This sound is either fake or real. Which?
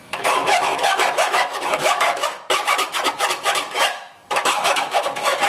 fake